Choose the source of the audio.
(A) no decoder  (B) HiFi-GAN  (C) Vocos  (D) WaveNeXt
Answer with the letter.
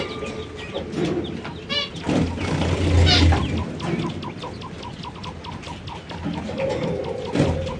A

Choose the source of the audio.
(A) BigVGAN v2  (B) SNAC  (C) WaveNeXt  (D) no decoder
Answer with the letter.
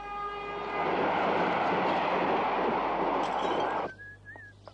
D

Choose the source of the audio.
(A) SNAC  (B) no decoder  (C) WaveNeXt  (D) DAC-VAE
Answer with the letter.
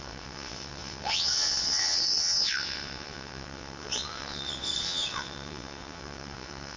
C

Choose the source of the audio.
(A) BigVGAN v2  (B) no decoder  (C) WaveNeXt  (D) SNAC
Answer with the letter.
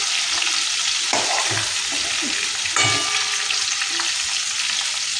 B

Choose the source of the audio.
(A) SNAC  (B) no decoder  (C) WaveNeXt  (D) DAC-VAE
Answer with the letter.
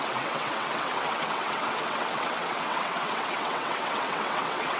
C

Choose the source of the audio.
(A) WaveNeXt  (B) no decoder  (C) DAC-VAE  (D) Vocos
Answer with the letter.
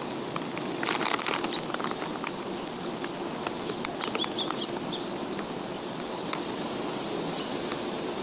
B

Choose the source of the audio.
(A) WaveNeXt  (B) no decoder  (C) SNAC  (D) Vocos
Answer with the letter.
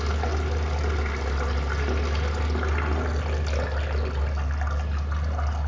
B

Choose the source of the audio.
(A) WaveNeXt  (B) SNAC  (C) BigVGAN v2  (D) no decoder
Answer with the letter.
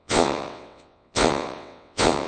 A